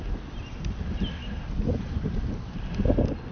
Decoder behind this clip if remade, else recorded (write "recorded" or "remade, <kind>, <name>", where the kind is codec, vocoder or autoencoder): recorded